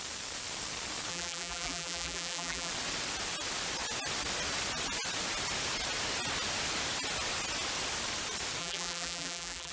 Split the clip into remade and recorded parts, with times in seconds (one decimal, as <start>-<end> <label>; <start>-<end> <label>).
0.0-1.1 recorded; 1.1-2.7 remade; 2.7-8.6 recorded; 8.6-9.7 remade